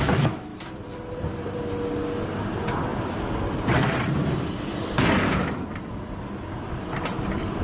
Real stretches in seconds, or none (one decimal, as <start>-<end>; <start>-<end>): 0.0-0.5; 1.6-2.9